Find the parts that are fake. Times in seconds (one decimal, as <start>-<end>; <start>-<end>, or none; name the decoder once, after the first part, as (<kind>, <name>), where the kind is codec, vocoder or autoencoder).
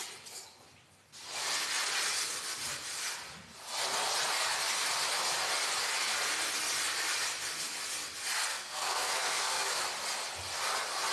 8.5-9.8 (codec, SNAC)